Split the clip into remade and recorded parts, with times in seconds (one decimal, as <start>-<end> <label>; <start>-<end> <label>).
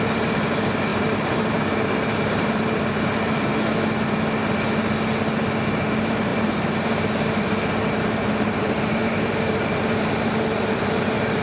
0.0-3.5 remade; 3.5-5.7 recorded; 5.7-11.4 remade